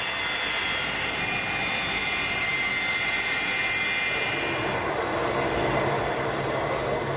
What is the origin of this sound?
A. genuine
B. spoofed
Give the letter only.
A